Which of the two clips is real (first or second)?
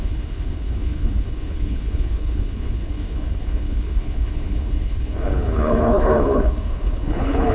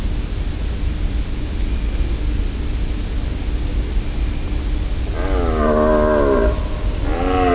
second